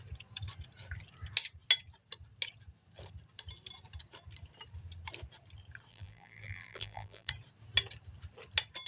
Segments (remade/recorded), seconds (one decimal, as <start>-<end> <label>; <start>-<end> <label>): 0.0-5.9 recorded; 5.9-7.3 remade; 7.3-8.9 recorded